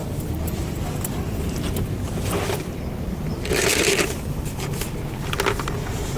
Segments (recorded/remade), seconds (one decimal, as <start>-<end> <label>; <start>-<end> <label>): 0.0-6.2 recorded